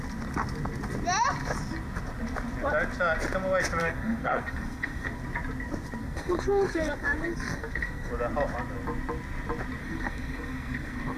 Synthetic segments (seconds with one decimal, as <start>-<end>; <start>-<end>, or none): 3.8-5.2; 6.0-8.1; 9.8-11.2